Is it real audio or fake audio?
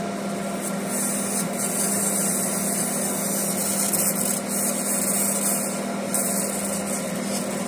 real